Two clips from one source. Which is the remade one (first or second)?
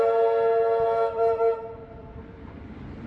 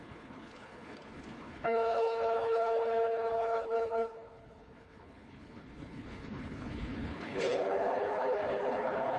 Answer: second